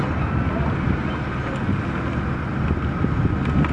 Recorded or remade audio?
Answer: recorded